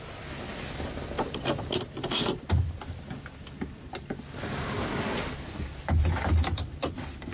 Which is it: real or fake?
real